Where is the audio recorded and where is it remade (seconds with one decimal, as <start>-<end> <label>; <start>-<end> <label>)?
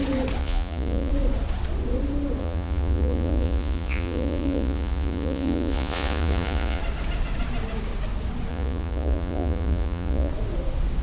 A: 0.0-0.4 recorded; 0.4-1.1 remade; 1.1-2.4 recorded; 2.4-6.8 remade; 6.8-8.5 recorded; 8.5-10.3 remade; 10.3-11.0 recorded